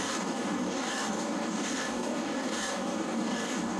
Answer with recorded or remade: remade